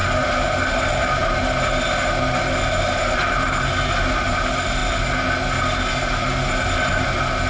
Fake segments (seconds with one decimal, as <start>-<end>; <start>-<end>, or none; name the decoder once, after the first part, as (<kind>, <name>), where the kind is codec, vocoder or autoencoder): none